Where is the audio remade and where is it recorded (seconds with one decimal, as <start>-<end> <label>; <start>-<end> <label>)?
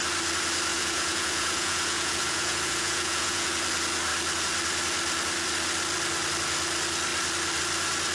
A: 0.0-0.7 recorded; 0.7-3.5 remade; 3.5-8.1 recorded